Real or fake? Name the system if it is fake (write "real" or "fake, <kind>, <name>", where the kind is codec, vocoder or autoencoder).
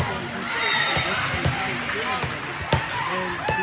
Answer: real